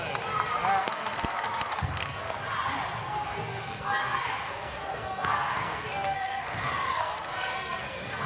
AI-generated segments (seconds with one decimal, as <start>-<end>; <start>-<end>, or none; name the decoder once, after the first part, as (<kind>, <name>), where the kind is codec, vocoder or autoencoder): 0.8-2.2 (codec, SNAC); 3.0-8.3